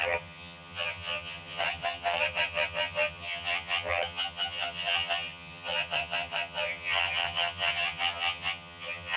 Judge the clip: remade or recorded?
remade